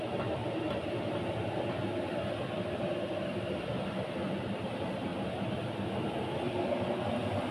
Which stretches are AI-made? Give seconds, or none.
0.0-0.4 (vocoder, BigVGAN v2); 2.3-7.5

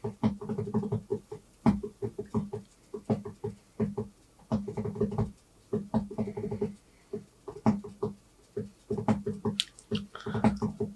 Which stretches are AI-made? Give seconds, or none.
1.1-2.2 (vocoder, BigVGAN v2)

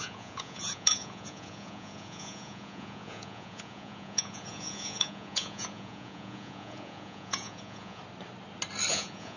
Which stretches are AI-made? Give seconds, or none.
0.0-8.0 (vocoder, Vocos); 8.9-9.4

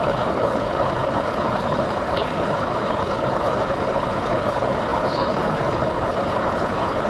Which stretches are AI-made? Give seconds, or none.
0.0-7.1 (codec, HILCodec)

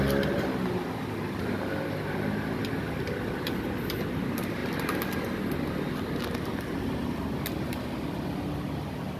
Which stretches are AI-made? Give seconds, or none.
none

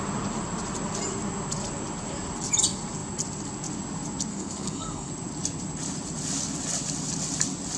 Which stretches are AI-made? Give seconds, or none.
4.3-5.1 (codec, SNAC)

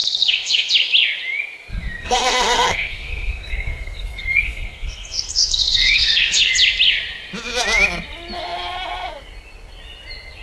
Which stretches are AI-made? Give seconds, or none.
0.0-0.7 (codec, SNAC); 2.0-6.5